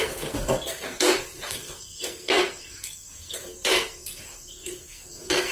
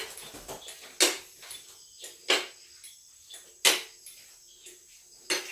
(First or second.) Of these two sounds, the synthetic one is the first